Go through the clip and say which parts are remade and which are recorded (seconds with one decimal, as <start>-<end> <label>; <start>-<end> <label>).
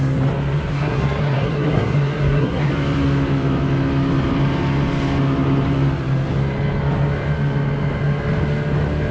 0.0-0.7 recorded; 0.7-2.7 remade; 2.7-9.1 recorded